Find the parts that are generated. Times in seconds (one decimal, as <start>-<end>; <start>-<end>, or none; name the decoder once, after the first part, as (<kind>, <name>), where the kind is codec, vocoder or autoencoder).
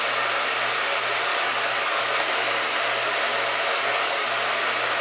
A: 1.3-2.0 (codec, DAC); 3.7-4.3